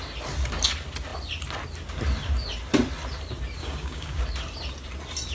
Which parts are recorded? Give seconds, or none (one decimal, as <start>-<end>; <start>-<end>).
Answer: 0.0-3.6; 4.2-5.3